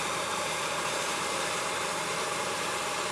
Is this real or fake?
fake